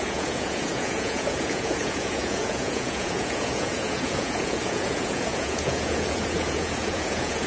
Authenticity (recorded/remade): remade